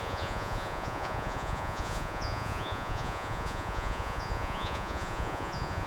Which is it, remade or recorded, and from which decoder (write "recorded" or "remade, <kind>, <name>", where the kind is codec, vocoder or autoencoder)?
remade, vocoder, Vocos